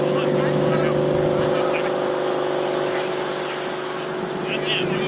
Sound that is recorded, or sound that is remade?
recorded